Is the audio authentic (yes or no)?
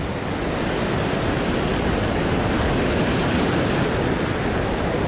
yes